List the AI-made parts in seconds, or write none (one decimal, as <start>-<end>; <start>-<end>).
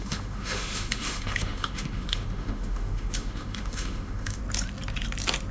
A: 0.0-4.4